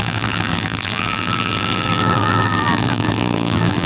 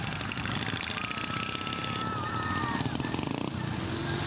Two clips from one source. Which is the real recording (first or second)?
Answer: second